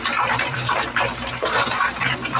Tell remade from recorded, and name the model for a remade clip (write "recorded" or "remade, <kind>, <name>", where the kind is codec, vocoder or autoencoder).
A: remade, vocoder, BigVGAN v2